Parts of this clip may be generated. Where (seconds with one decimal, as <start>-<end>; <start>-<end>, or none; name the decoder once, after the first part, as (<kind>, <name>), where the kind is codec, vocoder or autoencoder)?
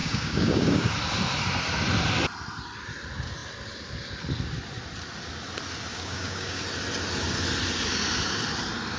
0.0-0.9 (codec, DAC); 5.9-6.6